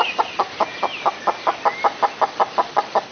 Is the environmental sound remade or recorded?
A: recorded